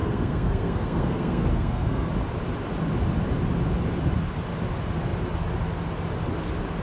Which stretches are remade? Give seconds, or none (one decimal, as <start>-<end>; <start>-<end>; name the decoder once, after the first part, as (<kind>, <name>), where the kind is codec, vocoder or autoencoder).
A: 0.0-2.1 (codec, SNAC)